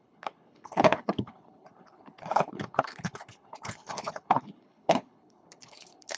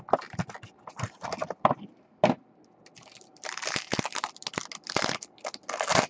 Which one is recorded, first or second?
second